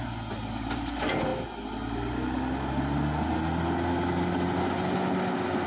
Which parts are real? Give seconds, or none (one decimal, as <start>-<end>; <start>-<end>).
0.0-5.7